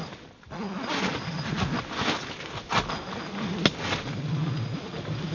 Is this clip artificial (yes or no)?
no